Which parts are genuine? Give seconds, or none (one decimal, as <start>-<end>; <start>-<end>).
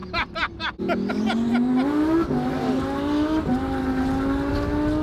0.0-5.0